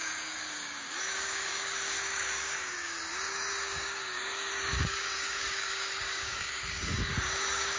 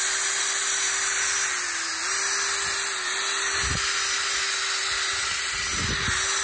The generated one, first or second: first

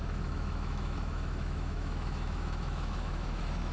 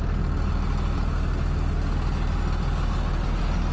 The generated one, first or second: first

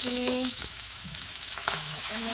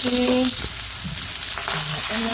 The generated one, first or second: first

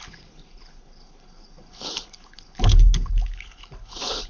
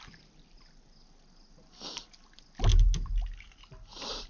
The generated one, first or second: first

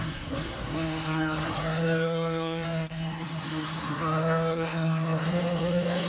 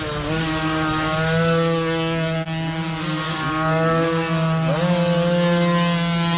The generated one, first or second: first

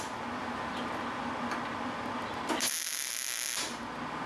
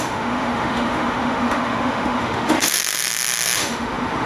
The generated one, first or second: second